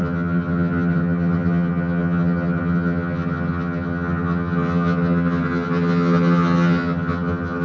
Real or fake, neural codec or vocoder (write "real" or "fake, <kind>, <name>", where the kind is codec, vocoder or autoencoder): fake, vocoder, HiFi-GAN